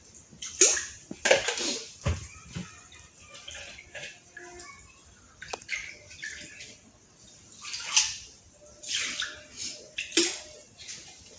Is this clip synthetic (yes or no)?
no